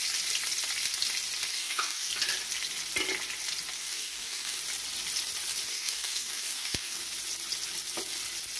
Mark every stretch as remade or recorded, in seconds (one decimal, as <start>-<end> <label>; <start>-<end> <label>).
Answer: 0.0-1.5 recorded; 1.5-2.1 remade; 2.1-3.8 recorded; 3.8-4.6 remade; 4.6-5.7 recorded; 5.7-7.0 remade; 7.0-8.6 recorded